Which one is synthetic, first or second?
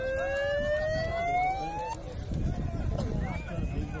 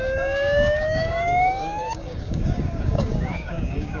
second